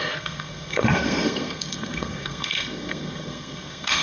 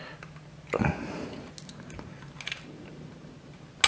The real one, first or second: second